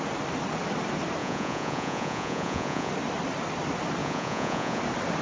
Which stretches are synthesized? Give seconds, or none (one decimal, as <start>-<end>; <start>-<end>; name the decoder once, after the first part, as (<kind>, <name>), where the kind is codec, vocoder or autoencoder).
1.2-2.9 (vocoder, Vocos); 4.0-4.8